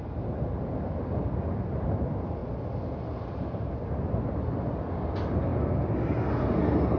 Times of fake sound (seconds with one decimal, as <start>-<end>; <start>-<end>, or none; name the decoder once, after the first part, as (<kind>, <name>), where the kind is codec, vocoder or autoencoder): none